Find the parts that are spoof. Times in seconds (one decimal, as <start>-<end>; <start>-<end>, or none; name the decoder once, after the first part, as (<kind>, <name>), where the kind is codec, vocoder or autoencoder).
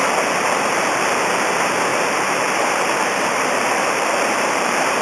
1.9-5.0 (vocoder, BigVGAN v2)